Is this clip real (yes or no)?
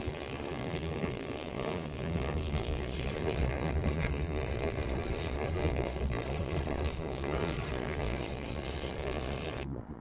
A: no